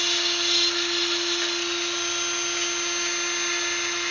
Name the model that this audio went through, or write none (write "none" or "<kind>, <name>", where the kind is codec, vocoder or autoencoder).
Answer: none